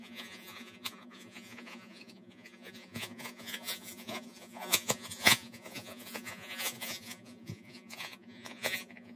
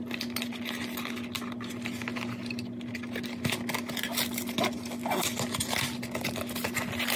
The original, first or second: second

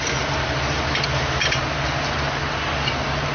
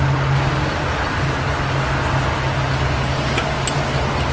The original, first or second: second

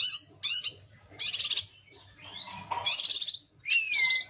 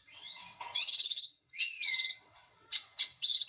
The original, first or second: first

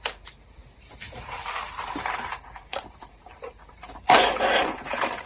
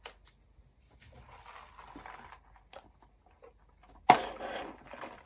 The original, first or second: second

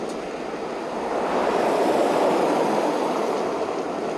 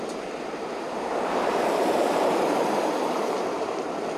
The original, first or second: first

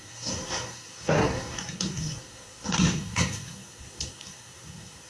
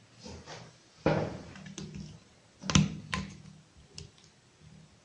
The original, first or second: second